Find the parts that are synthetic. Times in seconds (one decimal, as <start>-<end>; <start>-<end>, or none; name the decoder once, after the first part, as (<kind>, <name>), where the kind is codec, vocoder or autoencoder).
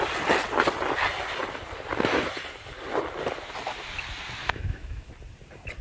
4.4-5.1 (autoencoder, DAC-VAE)